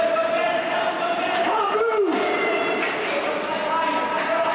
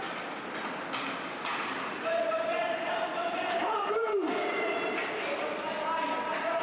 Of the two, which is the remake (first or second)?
second